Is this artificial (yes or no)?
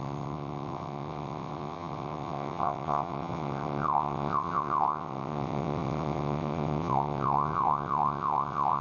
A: yes